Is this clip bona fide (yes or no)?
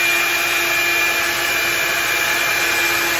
yes